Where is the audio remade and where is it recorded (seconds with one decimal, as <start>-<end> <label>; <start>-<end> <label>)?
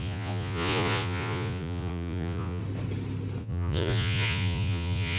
0.0-2.6 remade; 2.6-3.4 recorded; 3.4-5.2 remade